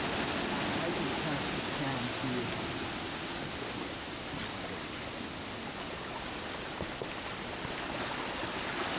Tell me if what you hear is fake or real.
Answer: real